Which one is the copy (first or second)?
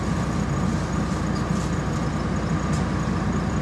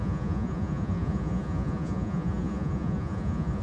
second